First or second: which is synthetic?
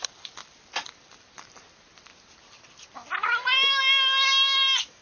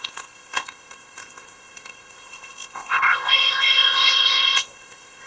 second